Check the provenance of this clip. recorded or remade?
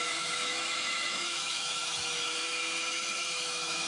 remade